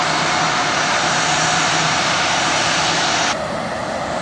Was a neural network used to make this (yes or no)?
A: yes